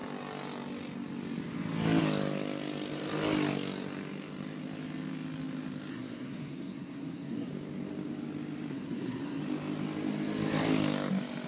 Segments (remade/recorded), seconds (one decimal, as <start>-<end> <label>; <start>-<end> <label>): 0.0-5.9 recorded; 5.9-7.5 remade; 7.5-8.7 recorded; 8.7-9.4 remade; 9.4-11.5 recorded